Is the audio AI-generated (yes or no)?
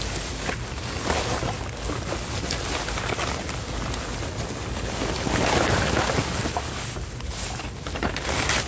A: no